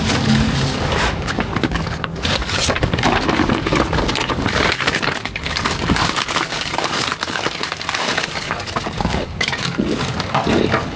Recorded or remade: remade